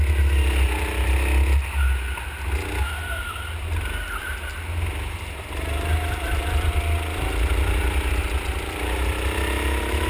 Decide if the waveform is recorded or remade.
recorded